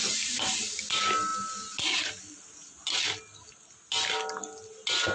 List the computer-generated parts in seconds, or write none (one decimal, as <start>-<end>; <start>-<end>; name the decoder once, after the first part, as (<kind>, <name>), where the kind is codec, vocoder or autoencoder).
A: none